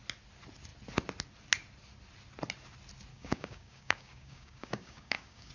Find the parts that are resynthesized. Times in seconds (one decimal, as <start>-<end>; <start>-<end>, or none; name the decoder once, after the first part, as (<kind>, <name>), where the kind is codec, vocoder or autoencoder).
3.1-5.5 (codec, DAC)

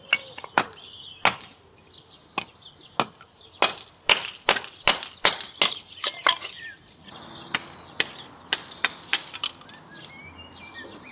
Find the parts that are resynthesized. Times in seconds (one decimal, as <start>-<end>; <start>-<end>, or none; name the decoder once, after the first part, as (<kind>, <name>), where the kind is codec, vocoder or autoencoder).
none

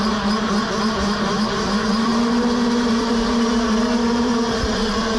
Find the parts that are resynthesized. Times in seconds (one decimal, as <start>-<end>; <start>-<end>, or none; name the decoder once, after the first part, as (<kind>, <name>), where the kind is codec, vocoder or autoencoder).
0.0-5.2 (vocoder, BigVGAN v2)

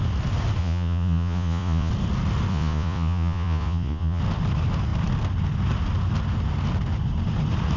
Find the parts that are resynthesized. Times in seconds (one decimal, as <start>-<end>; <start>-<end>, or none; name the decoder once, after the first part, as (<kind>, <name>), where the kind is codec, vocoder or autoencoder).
0.6-1.9 (vocoder, Vocos); 2.5-4.2

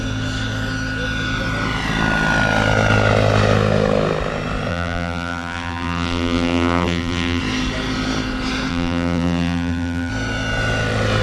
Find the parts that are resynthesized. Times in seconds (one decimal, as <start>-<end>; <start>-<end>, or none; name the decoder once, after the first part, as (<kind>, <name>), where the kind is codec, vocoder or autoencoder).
4.7-7.4 (vocoder, BigVGAN v2); 8.7-10.1

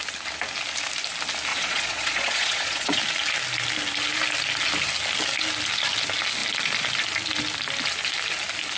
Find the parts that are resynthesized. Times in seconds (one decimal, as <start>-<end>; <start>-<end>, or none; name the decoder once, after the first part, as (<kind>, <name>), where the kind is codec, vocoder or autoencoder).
1.5-3.0 (vocoder, Vocos)